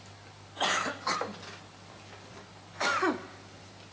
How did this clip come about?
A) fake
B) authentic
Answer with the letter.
B